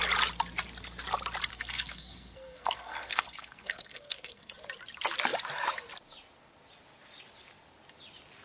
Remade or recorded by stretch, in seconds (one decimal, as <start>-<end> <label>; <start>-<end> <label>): 0.0-1.5 recorded; 1.5-4.5 remade; 4.5-8.4 recorded